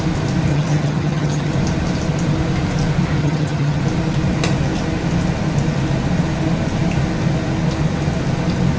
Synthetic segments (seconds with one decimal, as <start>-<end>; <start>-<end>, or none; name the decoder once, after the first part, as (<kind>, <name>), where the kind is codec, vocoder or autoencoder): 0.5-1.5 (vocoder, HiFi-GAN); 3.2-3.8